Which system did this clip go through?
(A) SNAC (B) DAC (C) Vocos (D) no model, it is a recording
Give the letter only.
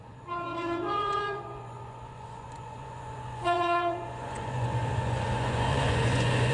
C